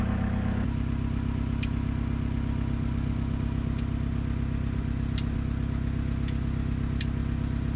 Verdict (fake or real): real